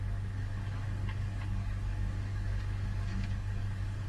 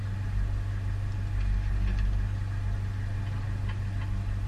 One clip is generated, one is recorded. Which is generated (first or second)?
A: first